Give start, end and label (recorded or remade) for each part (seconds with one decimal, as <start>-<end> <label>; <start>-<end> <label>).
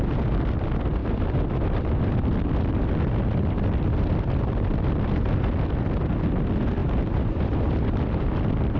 0.0-8.8 recorded